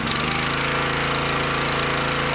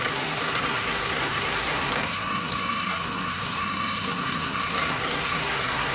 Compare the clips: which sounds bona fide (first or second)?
first